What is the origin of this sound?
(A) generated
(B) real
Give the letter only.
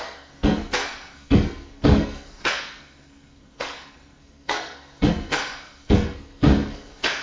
A